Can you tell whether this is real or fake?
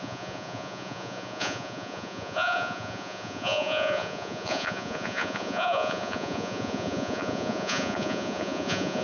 fake